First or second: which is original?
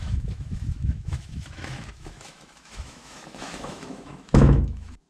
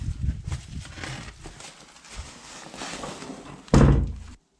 second